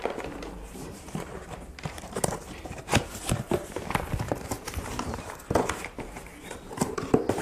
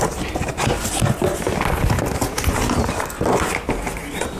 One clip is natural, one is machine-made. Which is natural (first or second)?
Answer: second